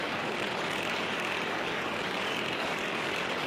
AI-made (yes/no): yes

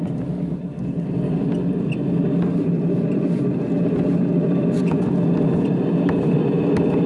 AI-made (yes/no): no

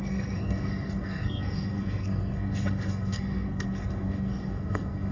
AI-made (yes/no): yes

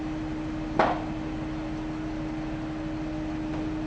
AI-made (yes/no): no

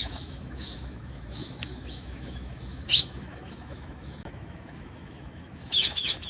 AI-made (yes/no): yes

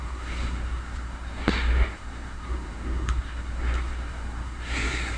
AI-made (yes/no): yes